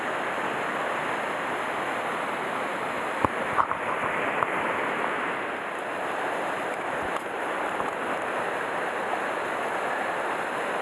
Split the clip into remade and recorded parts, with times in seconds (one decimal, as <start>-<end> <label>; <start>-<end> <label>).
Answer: 0.0-10.8 recorded